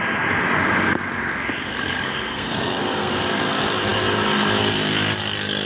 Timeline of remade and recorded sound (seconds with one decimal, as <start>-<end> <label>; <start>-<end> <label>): 0.0-1.7 recorded; 1.7-3.1 remade; 3.1-5.7 recorded